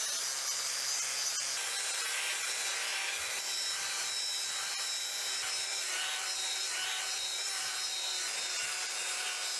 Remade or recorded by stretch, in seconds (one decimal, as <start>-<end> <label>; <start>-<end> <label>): 0.0-2.9 recorded; 2.9-8.1 remade; 8.1-9.6 recorded